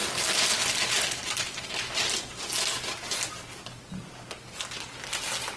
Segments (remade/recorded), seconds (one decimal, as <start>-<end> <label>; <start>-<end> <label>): 0.0-5.6 recorded